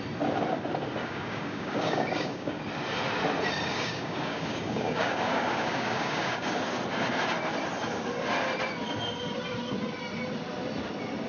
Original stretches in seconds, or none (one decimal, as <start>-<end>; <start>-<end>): 0.0-1.0; 2.6-3.7; 6.6-11.3